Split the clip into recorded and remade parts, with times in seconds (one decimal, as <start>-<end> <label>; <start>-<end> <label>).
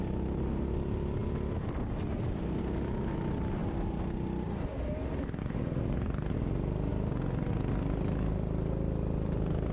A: 0.0-9.7 recorded